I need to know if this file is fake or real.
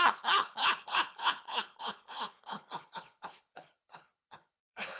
fake